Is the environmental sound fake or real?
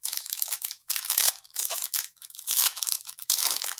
fake